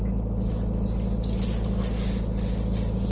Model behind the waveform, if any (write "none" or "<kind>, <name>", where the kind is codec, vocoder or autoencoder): none